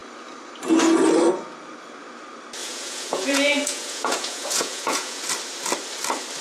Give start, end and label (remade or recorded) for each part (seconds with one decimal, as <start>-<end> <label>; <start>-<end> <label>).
0.0-2.6 recorded; 2.6-5.2 remade; 5.2-6.4 recorded